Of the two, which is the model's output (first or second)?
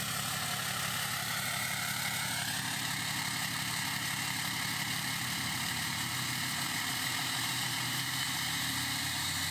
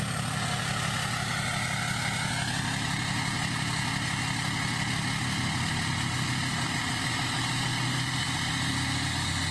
first